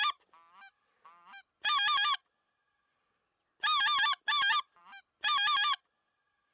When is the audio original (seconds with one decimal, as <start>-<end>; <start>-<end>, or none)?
0.0-6.5